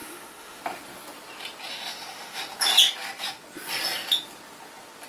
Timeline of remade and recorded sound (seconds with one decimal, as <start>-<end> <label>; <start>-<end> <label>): 0.0-0.6 remade; 0.6-1.7 recorded; 1.7-2.4 remade; 2.4-5.1 recorded